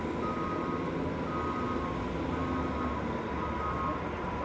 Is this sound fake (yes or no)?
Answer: no